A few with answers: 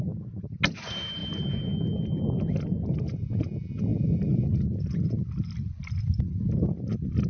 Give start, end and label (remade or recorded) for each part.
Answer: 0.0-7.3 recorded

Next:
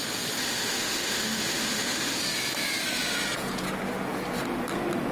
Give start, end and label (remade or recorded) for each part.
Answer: 0.0-0.4 recorded; 0.4-2.2 remade; 2.2-5.1 recorded